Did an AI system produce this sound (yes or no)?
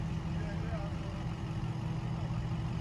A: no